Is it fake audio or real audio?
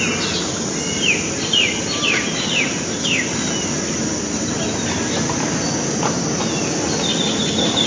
real